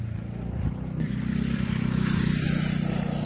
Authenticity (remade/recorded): recorded